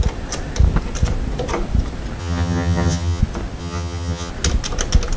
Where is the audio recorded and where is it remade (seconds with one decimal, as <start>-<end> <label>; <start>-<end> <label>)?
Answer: 0.0-2.2 recorded; 2.2-3.2 remade; 3.2-3.6 recorded; 3.6-4.3 remade; 4.3-5.2 recorded